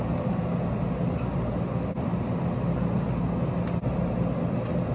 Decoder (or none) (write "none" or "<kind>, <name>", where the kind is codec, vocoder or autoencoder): none